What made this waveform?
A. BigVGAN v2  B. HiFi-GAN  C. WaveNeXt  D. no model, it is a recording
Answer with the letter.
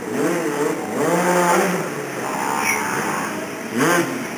D